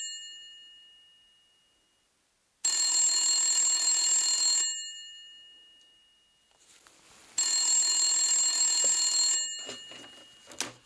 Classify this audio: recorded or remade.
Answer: recorded